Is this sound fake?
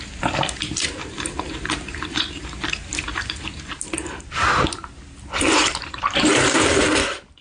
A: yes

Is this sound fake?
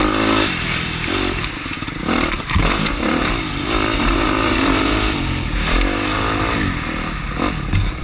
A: no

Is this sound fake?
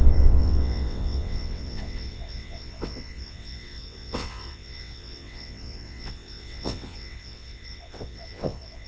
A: yes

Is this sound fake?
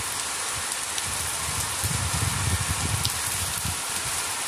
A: yes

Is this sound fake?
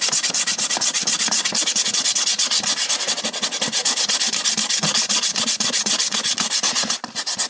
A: no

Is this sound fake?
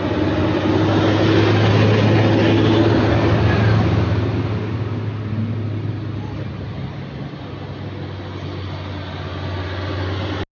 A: no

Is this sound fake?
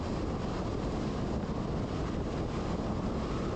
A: no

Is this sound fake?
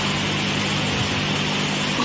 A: no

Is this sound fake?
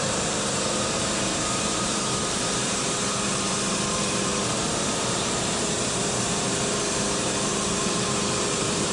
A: yes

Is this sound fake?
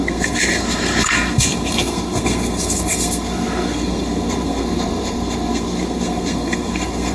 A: yes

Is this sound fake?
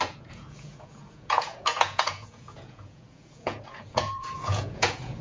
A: yes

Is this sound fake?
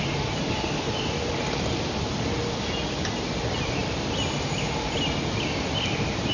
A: no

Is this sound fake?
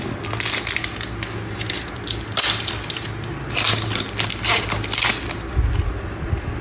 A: no